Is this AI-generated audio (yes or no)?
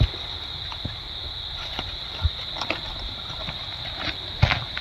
no